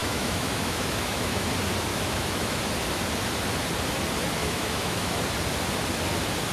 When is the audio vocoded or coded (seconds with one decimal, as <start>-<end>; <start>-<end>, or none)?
0.0-1.5; 1.9-2.6; 4.4-5.2